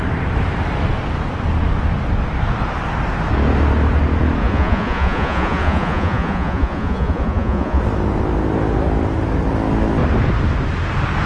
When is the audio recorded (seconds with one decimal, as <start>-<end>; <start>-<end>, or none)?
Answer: 0.0-4.4; 7.8-11.3

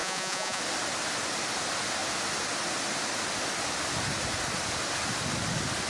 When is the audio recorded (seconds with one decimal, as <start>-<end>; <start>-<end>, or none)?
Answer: 0.6-5.9